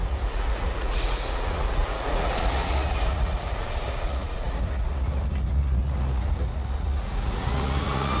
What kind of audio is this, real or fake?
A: fake